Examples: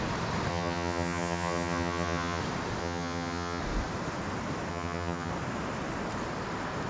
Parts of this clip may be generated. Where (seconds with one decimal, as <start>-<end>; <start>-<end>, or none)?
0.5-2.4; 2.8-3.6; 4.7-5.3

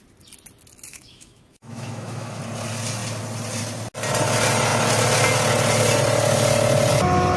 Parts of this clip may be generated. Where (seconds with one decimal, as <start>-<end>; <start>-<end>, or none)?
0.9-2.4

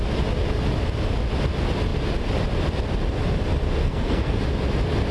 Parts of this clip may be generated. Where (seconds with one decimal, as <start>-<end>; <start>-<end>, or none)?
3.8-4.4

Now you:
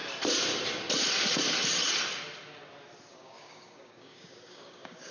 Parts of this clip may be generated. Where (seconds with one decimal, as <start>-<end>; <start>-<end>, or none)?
3.1-5.1

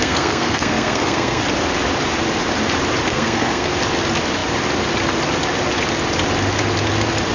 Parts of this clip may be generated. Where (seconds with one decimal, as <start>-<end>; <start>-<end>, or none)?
0.0-1.4; 3.1-3.7